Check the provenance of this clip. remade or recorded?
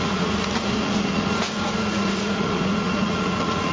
remade